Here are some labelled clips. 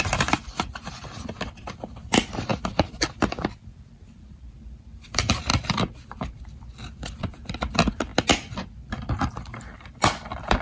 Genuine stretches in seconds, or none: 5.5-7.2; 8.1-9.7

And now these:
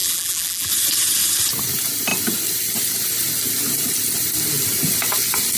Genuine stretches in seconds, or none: 0.7-5.6

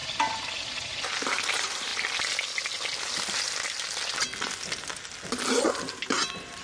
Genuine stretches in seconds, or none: 0.0-1.5; 1.9-5.9

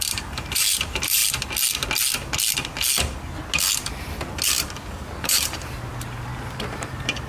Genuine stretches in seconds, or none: 1.2-5.2; 6.3-7.3

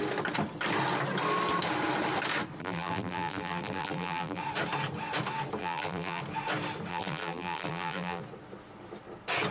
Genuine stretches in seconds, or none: 0.0-2.6; 4.4-5.6; 6.2-6.9; 8.2-9.5

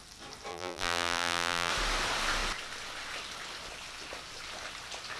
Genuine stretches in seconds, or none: 0.0-0.5; 1.7-5.2

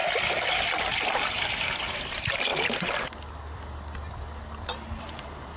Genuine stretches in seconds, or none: 0.0-0.8; 2.5-5.0